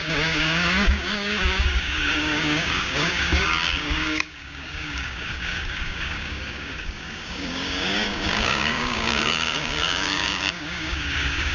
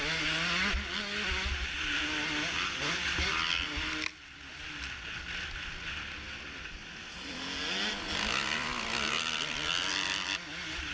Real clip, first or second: second